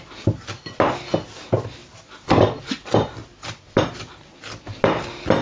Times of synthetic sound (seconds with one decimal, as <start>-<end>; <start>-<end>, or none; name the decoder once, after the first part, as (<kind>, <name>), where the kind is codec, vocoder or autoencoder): none